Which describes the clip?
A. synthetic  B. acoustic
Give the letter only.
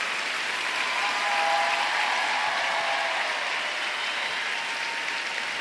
B